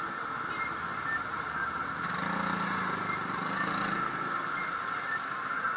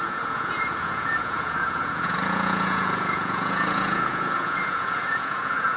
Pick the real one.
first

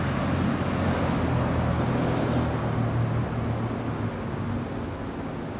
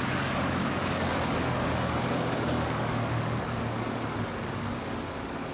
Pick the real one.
first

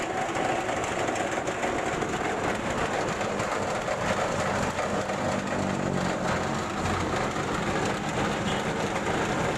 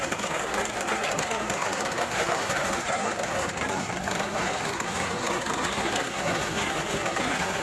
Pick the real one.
first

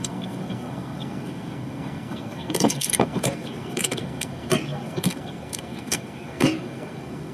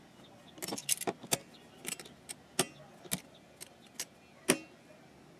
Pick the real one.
second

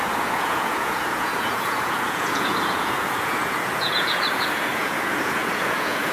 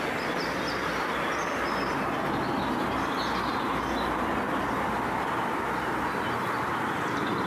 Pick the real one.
second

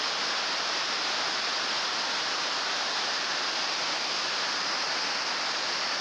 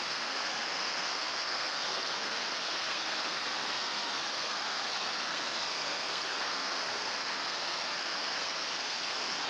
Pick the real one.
first